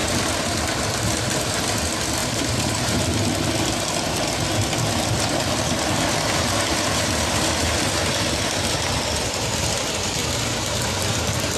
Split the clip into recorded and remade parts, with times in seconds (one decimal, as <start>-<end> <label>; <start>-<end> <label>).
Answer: 0.0-0.8 remade; 0.8-2.2 recorded; 2.2-3.1 remade; 3.1-11.6 recorded